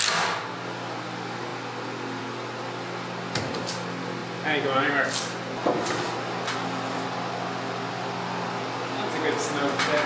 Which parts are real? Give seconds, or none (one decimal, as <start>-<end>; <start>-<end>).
0.0-10.1